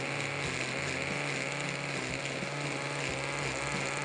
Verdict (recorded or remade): recorded